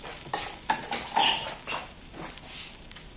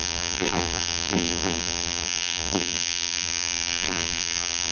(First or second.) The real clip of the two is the first